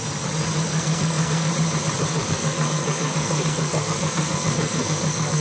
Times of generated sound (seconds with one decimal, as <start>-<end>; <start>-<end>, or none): 0.7-1.5; 2.1-5.4